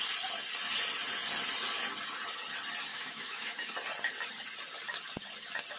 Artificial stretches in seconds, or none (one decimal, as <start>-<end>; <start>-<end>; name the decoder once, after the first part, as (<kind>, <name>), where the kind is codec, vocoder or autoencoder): 2.9-3.7 (autoencoder, DAC-VAE)